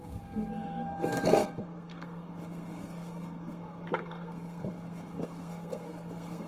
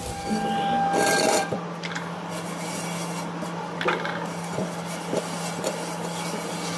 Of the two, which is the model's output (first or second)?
first